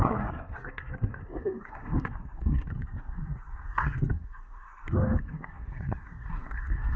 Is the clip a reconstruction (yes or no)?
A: yes